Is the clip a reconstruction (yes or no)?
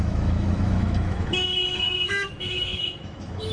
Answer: yes